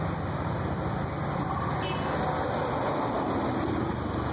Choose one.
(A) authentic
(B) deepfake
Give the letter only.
A